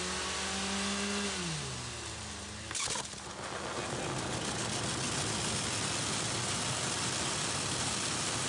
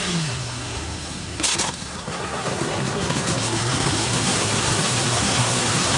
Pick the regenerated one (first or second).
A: second